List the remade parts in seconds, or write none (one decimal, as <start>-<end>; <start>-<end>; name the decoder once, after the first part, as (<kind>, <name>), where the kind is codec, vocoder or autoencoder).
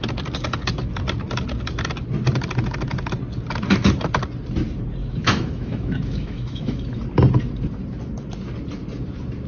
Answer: 5.0-7.0 (autoencoder, DAC-VAE)